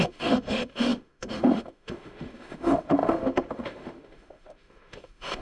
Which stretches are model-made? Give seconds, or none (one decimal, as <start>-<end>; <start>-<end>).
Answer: 0.0-5.4